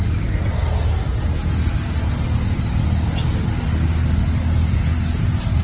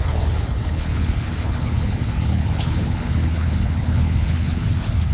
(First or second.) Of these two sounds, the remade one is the second